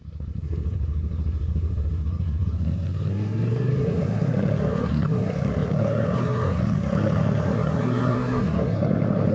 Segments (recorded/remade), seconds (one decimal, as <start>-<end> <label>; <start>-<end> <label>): 0.0-9.3 remade